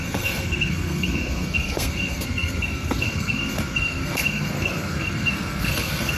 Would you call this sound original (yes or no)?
no